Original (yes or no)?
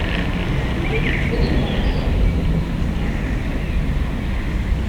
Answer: yes